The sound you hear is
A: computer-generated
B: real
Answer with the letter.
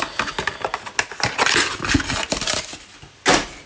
B